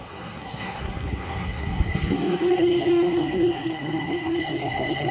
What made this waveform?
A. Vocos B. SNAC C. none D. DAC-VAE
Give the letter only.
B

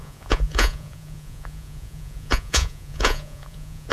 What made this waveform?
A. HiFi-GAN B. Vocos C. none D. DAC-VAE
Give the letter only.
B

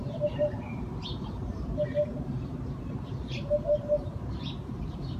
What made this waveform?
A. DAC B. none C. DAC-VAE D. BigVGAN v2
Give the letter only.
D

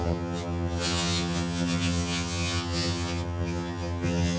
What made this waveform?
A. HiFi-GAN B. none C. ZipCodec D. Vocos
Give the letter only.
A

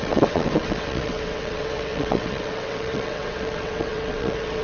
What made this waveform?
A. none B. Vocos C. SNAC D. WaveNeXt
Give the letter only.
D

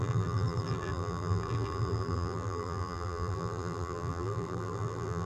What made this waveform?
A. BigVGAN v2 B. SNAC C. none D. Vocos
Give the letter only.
A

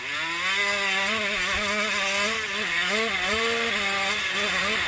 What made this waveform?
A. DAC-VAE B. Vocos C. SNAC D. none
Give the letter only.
D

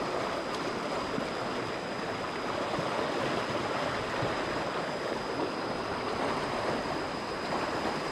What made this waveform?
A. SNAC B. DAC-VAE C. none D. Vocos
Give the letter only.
C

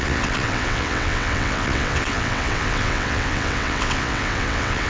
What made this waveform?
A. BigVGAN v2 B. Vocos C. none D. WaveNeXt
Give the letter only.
D